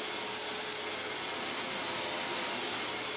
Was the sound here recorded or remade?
recorded